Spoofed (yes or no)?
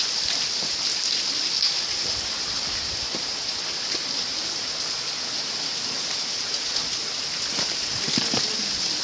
no